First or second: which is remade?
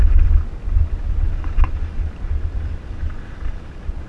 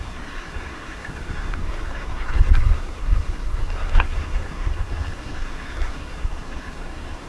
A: second